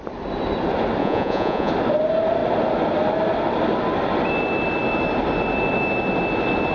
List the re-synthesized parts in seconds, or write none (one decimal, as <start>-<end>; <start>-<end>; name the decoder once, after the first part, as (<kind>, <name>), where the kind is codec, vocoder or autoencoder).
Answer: 1.0-1.7 (vocoder, Vocos)